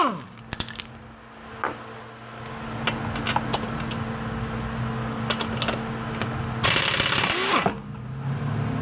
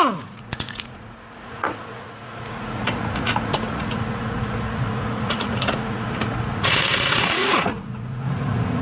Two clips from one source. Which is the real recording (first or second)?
first